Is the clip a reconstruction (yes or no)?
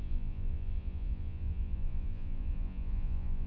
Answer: yes